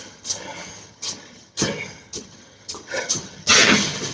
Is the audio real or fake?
fake